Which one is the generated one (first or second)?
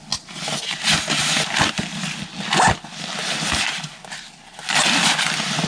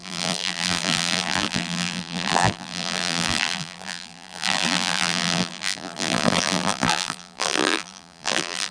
second